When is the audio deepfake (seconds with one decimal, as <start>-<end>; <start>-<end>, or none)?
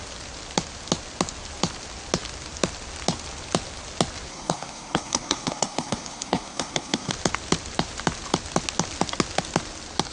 4.3-7.1